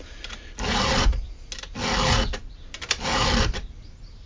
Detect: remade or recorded recorded